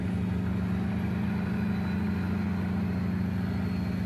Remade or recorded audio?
recorded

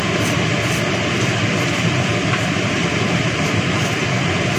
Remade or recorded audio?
remade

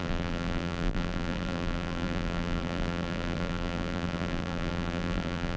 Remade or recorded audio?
remade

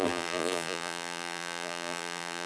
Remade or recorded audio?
remade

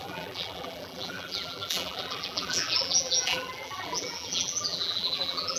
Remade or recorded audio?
remade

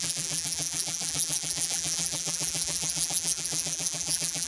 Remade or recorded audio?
remade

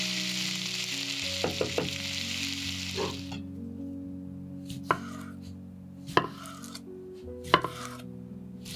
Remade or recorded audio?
recorded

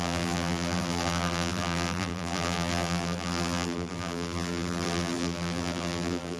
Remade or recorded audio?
remade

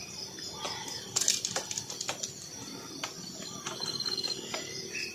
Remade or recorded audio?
recorded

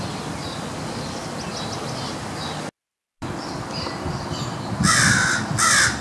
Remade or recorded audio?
recorded